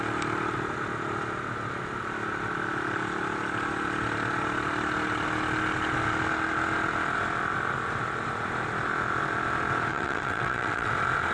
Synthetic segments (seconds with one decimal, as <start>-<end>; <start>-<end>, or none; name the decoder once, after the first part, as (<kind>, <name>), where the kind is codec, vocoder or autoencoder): 9.9-10.9 (vocoder, WaveNeXt)